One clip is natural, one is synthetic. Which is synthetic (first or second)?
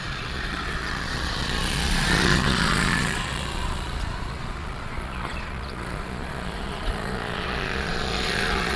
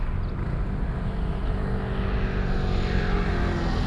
first